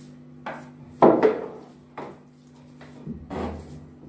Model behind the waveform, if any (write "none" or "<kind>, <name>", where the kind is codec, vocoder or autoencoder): none